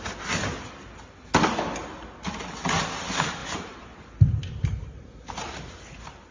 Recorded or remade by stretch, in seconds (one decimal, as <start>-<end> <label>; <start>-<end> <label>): 0.0-3.4 recorded; 3.4-4.7 remade; 4.7-6.3 recorded